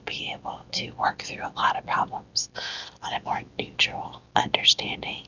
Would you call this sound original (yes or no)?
yes